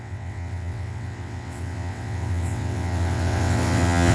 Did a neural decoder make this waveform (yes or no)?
yes